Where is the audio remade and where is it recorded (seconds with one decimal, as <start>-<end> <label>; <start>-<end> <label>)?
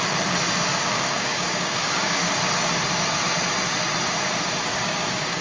0.0-0.7 recorded; 0.7-2.4 remade; 2.4-4.7 recorded; 4.7-5.4 remade